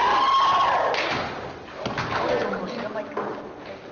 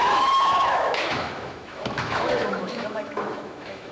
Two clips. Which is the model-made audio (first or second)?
second